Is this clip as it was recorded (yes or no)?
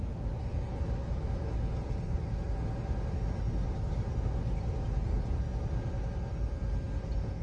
yes